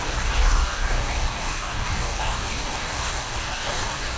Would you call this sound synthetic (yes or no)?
yes